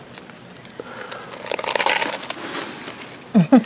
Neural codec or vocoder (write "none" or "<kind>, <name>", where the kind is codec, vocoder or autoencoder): none